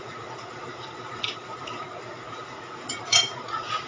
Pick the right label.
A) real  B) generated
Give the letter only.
B